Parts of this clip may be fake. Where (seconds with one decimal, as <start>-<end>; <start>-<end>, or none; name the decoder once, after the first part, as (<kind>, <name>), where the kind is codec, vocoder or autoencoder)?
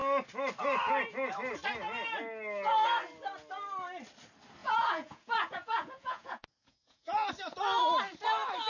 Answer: 4.6-7.3 (vocoder, Vocos)